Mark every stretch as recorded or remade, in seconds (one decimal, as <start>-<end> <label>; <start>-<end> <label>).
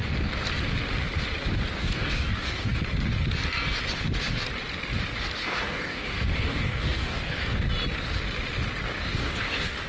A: 0.0-1.8 recorded; 1.8-2.8 remade; 2.8-5.4 recorded; 5.4-7.7 remade; 7.7-8.9 recorded; 8.9-9.9 remade